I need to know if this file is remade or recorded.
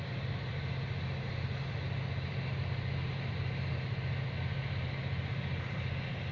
recorded